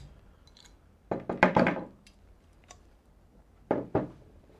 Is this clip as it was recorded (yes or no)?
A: no